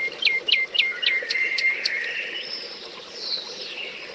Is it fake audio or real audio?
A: real